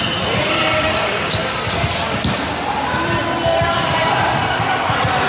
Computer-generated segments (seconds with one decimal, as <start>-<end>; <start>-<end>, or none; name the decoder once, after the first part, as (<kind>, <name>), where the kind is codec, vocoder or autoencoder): none